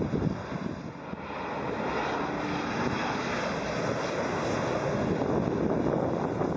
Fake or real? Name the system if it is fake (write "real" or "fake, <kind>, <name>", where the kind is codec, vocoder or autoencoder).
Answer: real